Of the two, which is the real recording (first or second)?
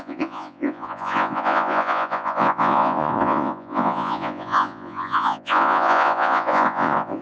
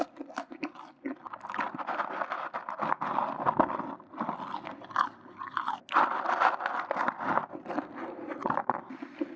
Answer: second